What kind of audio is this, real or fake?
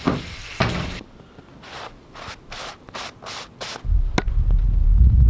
real